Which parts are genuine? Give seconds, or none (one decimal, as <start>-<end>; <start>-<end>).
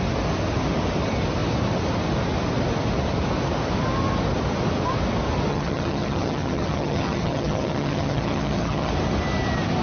0.0-5.5; 8.9-9.8